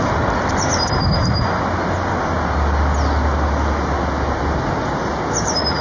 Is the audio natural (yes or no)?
yes